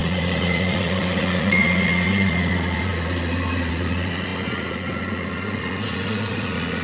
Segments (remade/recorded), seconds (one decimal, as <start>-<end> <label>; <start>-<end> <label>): 0.0-6.8 remade